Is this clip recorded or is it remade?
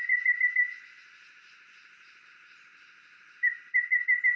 remade